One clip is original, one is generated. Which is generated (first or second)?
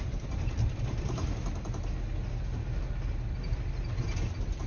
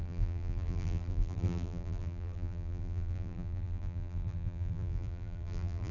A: second